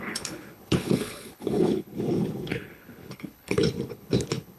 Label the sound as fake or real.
fake